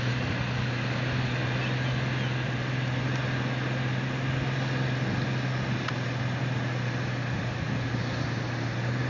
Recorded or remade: recorded